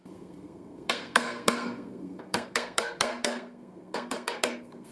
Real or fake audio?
fake